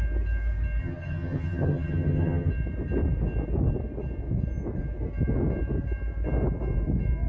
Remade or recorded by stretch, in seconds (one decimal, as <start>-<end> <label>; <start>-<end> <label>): 0.0-0.8 recorded; 0.8-2.5 remade; 2.5-7.3 recorded